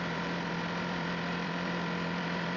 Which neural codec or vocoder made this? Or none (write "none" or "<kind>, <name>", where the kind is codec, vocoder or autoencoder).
vocoder, BigVGAN v2